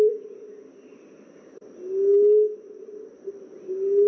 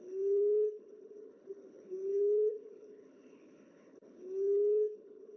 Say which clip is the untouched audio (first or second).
first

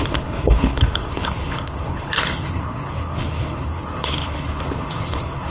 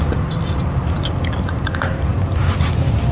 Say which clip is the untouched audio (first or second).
second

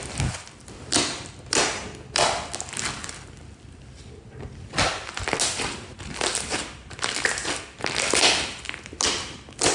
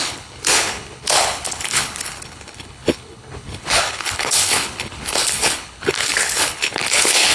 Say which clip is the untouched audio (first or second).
first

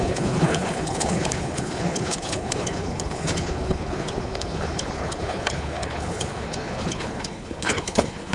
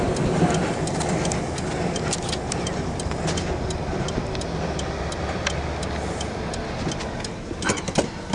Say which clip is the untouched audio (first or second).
second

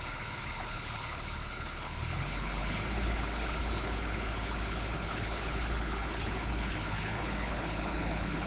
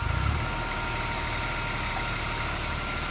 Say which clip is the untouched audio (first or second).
second